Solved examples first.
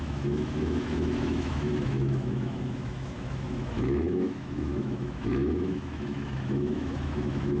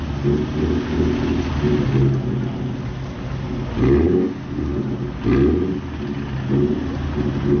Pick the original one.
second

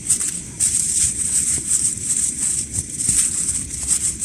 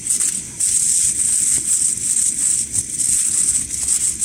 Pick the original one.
second